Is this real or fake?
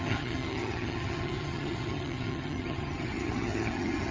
fake